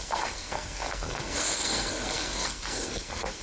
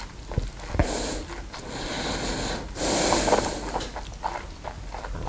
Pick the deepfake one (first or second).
first